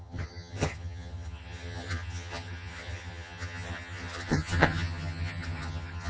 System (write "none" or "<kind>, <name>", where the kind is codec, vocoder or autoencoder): vocoder, HiFi-GAN